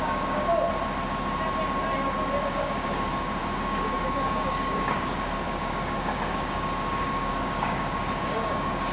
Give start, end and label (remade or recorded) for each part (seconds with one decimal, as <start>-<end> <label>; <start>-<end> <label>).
0.0-0.4 remade; 0.4-2.5 recorded; 2.5-8.9 remade